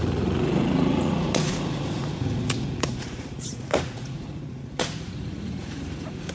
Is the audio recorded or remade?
remade